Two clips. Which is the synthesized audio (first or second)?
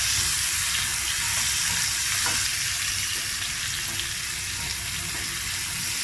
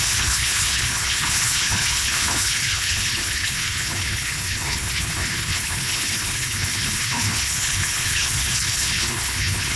second